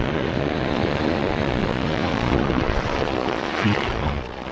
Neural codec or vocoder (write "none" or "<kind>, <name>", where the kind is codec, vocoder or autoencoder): vocoder, Vocos